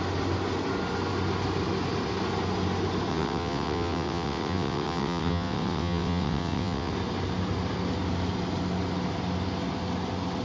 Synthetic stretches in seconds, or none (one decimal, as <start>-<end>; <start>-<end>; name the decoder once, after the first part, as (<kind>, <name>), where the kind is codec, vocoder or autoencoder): 3.1-6.9 (vocoder, WaveNeXt)